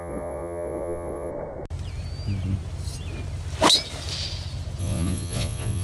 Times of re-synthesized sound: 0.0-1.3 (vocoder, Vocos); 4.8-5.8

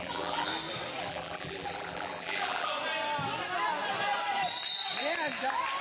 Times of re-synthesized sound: 0.0-0.5 (vocoder, BigVGAN v2); 1.0-2.7

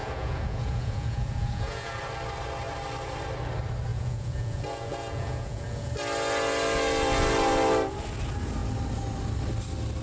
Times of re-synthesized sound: 0.0-2.0 (vocoder, Vocos); 3.9-5.9

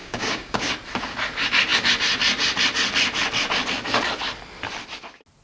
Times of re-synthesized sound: 0.0-0.7 (codec, DAC)

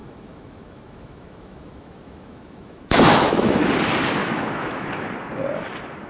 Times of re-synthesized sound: 0.0-3.7 (autoencoder, DAC-VAE); 4.2-4.9

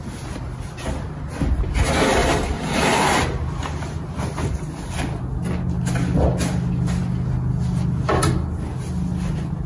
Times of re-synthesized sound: 2.2-4.8 (vocoder, BigVGAN v2)

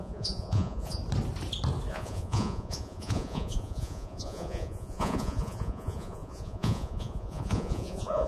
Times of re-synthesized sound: 0.0-1.0 (vocoder, Vocos); 1.9-8.3

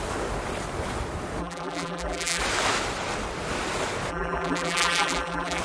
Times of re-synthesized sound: 1.4-2.4 (vocoder, BigVGAN v2); 4.1-5.6